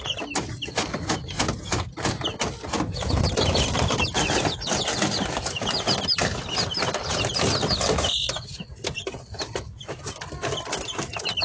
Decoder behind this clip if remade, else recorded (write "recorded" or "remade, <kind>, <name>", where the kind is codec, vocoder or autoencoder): recorded